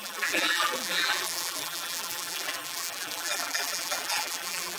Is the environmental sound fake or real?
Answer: fake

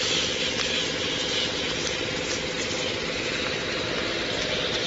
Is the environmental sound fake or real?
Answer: real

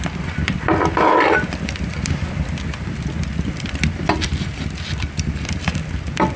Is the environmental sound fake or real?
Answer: fake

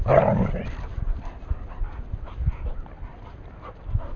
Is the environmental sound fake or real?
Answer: real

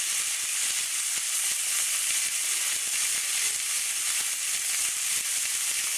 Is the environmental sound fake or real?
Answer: real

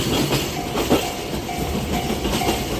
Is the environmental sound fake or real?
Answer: real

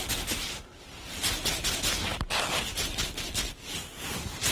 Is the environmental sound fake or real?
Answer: real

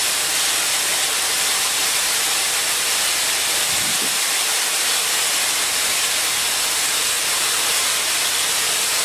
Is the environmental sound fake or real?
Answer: fake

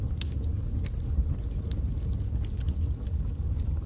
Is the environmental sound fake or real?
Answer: real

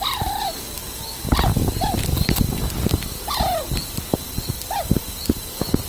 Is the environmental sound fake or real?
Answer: real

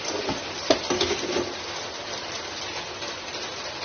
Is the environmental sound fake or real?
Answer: real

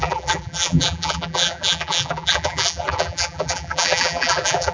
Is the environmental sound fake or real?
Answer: fake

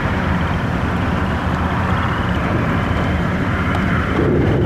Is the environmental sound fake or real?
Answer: fake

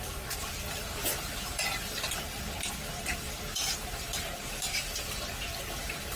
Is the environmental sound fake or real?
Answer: fake